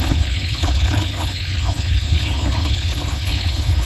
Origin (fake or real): fake